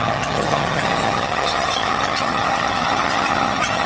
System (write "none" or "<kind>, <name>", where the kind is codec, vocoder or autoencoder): vocoder, HiFi-GAN